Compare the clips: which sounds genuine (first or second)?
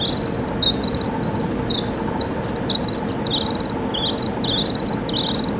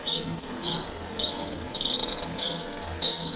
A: first